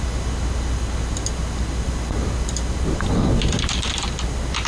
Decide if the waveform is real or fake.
real